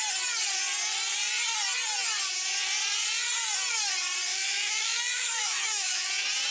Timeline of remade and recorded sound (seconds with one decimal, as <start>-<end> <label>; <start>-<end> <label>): 0.0-4.3 recorded; 4.3-6.1 remade; 6.1-6.5 recorded